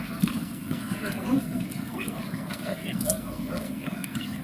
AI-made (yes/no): yes